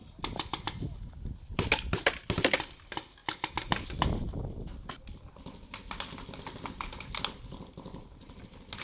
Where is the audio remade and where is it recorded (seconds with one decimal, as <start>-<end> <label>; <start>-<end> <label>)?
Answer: 0.0-8.8 recorded